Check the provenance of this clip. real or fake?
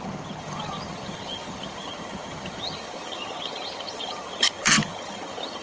fake